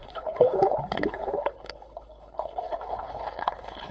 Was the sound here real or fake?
fake